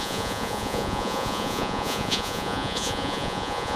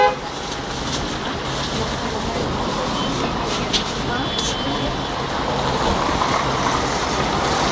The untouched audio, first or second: second